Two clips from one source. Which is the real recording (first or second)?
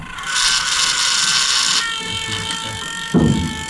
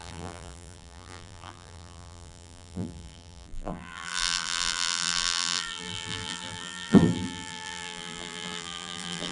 first